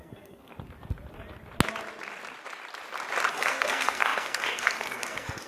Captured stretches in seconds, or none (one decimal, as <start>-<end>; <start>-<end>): 0.5-3.3